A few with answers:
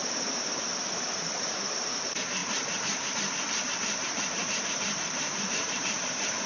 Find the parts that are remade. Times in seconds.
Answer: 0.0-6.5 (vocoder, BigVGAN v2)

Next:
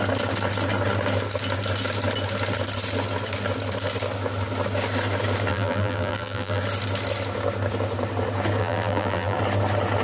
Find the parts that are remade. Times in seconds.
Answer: 5.5-6.6 (vocoder, BigVGAN v2); 8.6-9.4

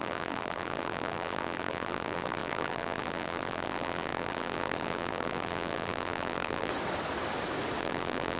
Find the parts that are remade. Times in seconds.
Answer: 0.0-6.7 (vocoder, BigVGAN v2); 7.8-8.4

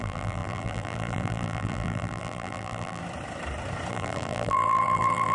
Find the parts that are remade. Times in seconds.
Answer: 0.0-3.0 (vocoder, BigVGAN v2); 3.9-5.3

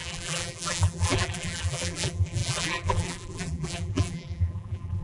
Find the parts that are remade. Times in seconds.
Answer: 0.0-5.0 (vocoder, BigVGAN v2)